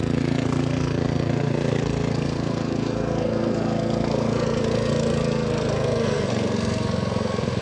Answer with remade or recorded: remade